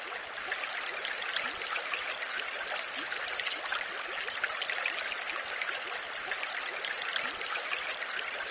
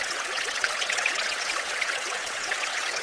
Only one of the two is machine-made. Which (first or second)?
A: second